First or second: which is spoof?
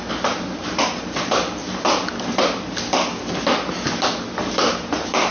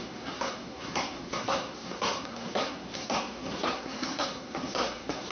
second